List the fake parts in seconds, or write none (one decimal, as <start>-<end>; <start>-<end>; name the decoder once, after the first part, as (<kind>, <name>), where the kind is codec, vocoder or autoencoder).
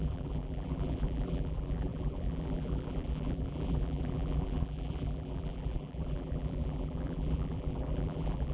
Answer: 0.0-8.5 (vocoder, BigVGAN v2)